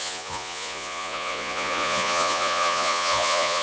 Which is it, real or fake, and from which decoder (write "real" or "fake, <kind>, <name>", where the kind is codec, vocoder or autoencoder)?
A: fake, vocoder, Vocos